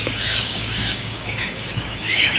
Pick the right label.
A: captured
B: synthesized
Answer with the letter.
B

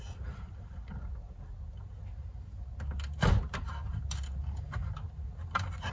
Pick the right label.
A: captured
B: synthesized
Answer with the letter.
A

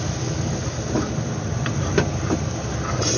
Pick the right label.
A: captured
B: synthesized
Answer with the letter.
A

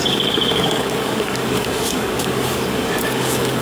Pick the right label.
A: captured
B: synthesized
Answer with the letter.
B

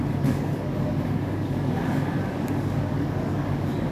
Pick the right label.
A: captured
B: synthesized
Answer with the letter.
B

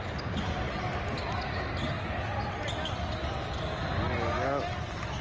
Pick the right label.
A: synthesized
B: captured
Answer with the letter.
B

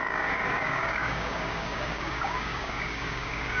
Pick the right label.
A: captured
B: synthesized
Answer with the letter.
B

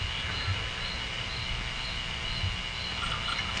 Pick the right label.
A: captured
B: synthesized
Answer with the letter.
A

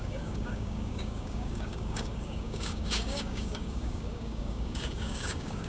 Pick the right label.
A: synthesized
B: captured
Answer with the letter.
A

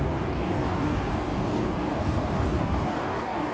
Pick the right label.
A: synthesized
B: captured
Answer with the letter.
A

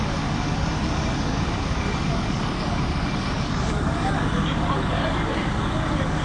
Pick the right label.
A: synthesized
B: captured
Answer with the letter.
A